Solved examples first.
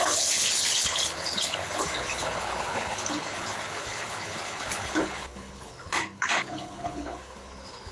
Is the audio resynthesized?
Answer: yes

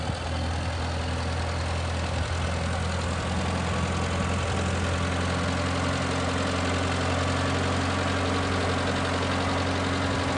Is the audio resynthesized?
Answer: no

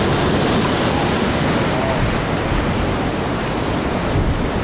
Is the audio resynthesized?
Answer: no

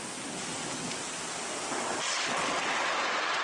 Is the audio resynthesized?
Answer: no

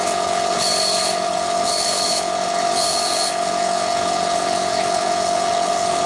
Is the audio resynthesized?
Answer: yes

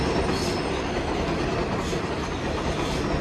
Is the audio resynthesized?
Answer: no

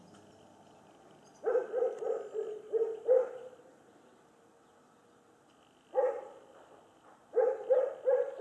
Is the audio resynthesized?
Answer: no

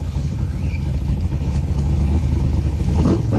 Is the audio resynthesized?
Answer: yes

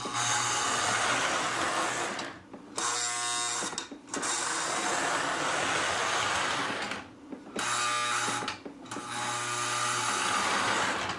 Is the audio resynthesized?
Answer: no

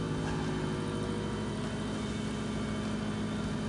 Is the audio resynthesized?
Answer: no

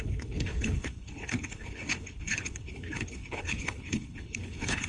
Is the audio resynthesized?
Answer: yes